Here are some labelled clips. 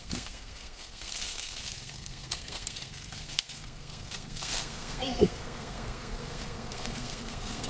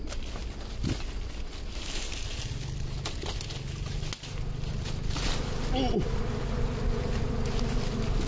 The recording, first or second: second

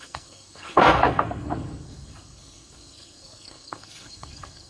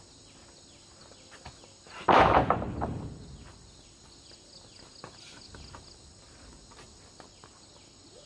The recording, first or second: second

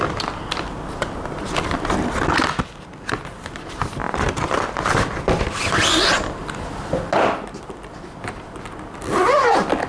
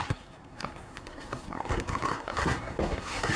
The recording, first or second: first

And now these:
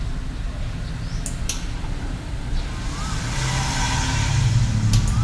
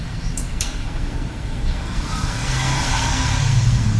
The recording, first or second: first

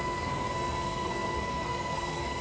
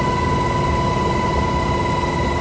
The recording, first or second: second